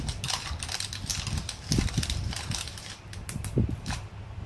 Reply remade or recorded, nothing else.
recorded